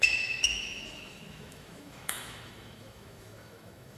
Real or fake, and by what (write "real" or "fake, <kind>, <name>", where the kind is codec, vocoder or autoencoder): fake, autoencoder, DAC-VAE